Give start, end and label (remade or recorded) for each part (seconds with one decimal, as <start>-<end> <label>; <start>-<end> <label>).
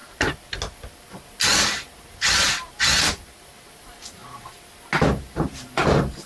0.0-3.8 recorded; 3.8-4.2 remade; 4.2-5.0 recorded; 5.0-6.3 remade